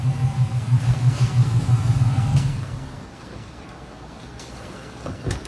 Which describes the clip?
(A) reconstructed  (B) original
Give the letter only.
A